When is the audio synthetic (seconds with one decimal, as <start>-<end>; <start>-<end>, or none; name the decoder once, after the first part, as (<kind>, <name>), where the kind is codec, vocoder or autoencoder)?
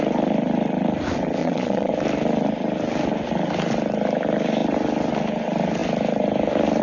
1.4-1.9 (vocoder, Vocos)